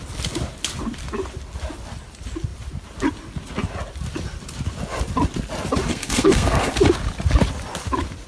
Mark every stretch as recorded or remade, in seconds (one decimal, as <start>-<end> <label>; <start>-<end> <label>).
0.0-5.9 recorded; 5.9-6.7 remade; 6.7-8.3 recorded